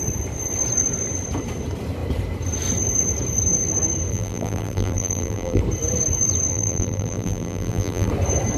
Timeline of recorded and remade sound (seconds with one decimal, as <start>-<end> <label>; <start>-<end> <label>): 0.0-4.1 recorded; 4.1-5.6 remade; 5.6-6.5 recorded; 6.5-8.1 remade; 8.1-8.6 recorded